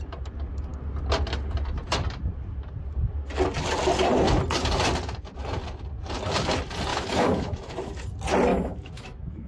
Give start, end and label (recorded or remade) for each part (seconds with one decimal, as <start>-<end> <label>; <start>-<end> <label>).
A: 0.0-6.9 recorded; 6.9-8.1 remade; 8.1-8.5 recorded; 8.5-9.5 remade